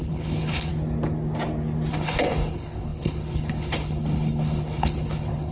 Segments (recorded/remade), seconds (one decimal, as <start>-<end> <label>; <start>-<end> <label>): 0.0-0.7 remade; 0.7-1.9 recorded; 1.9-5.5 remade